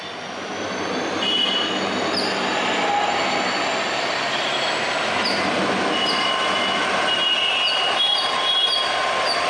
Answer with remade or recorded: recorded